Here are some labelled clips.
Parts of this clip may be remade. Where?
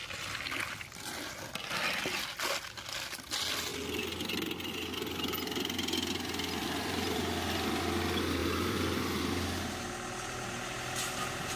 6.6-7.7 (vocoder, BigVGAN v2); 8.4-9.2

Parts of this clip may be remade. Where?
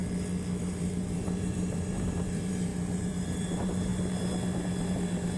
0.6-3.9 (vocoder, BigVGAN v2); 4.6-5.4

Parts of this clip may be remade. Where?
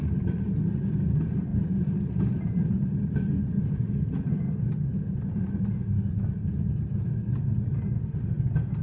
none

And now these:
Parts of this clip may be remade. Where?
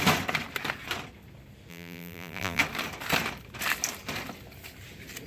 1.7-2.6 (vocoder, BigVGAN v2)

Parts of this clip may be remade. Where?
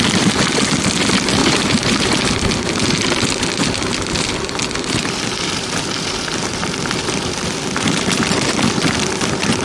1.4-2.4 (vocoder, BigVGAN v2)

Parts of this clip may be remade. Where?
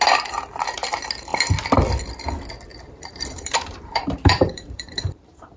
2.7-5.6 (vocoder, BigVGAN v2)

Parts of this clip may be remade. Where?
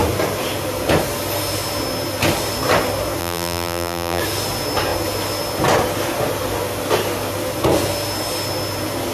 3.2-4.2 (vocoder, BigVGAN v2)